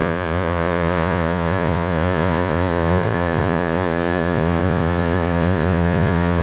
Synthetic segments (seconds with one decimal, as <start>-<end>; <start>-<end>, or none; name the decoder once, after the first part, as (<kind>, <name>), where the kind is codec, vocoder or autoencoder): 0.0-6.4 (vocoder, Vocos)